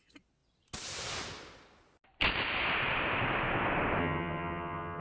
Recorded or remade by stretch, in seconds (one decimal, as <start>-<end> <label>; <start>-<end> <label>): 0.0-4.0 recorded; 4.0-5.0 remade